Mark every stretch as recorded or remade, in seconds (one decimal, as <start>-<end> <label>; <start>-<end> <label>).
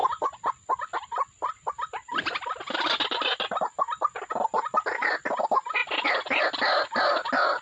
0.0-7.6 recorded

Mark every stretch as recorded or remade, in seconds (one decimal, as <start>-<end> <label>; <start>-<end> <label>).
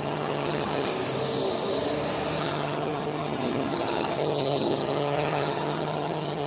0.0-0.9 remade; 0.9-2.4 recorded; 2.4-6.5 remade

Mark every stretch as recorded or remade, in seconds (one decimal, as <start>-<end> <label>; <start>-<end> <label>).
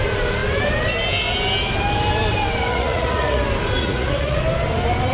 0.0-2.7 recorded; 2.7-3.4 remade; 3.4-3.8 recorded; 3.8-4.4 remade; 4.4-5.1 recorded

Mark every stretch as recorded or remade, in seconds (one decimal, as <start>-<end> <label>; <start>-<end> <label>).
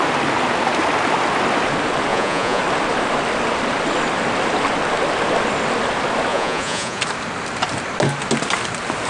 0.0-2.1 recorded; 2.1-2.6 remade; 2.6-6.3 recorded; 6.3-7.0 remade; 7.0-9.1 recorded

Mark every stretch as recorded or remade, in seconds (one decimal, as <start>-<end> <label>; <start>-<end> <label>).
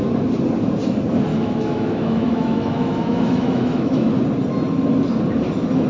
0.0-1.3 recorded; 1.3-4.1 remade; 4.1-5.9 recorded